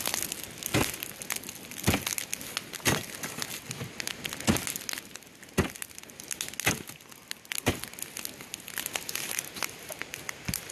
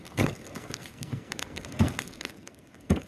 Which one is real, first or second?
first